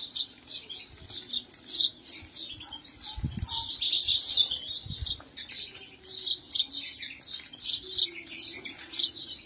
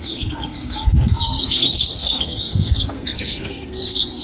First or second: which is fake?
second